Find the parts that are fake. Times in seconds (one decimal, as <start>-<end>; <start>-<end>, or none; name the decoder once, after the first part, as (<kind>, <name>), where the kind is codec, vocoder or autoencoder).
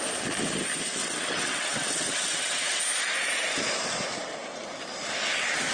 1.0-2.8 (vocoder, WaveNeXt)